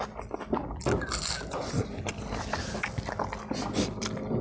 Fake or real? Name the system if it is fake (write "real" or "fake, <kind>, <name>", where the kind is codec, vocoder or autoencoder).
real